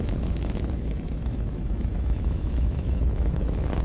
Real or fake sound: fake